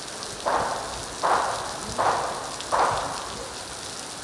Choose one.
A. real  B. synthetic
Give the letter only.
A